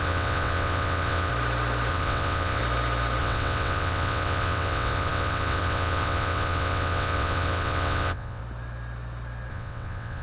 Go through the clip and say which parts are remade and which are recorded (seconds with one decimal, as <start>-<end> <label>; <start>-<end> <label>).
0.0-1.3 remade; 1.3-1.9 recorded; 1.9-2.6 remade; 2.6-3.2 recorded; 3.2-8.4 remade; 8.4-9.5 recorded; 9.5-10.2 remade